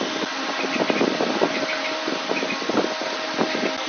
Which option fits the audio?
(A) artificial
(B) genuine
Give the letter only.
B